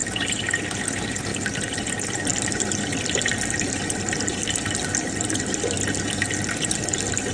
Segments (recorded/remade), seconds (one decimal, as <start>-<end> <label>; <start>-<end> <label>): 0.0-7.3 recorded